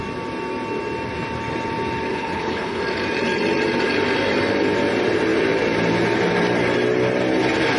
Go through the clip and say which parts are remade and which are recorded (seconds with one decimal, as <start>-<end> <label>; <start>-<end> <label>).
0.0-2.1 recorded; 2.1-2.8 remade; 2.8-7.8 recorded